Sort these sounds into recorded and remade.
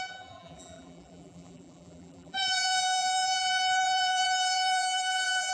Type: remade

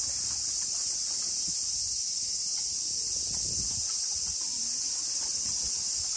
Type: recorded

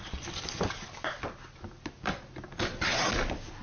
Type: recorded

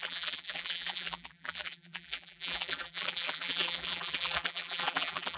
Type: remade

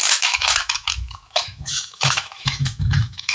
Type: remade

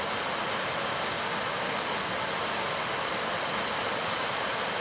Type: recorded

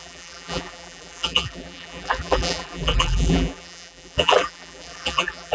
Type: remade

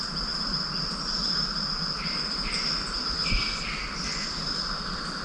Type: recorded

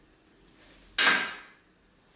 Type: recorded